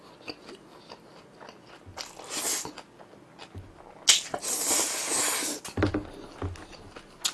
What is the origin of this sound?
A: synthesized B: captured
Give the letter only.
B